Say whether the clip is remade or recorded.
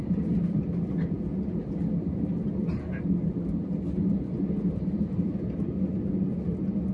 recorded